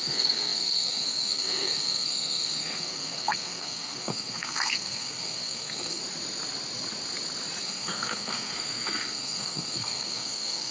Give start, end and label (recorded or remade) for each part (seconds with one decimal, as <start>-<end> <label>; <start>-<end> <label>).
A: 0.0-6.0 remade; 6.0-7.6 recorded; 7.6-10.7 remade